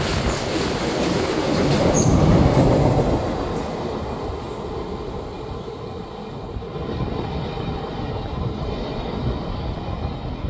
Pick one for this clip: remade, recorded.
recorded